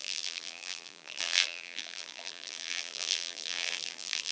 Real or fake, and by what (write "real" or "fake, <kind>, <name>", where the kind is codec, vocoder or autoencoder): fake, vocoder, BigVGAN v2